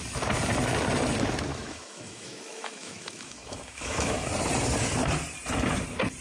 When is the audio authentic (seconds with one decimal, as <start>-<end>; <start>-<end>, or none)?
0.0-1.5; 4.3-6.2